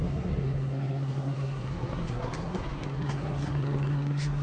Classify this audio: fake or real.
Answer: fake